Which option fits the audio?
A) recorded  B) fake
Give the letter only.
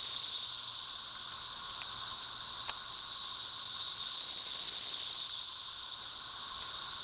A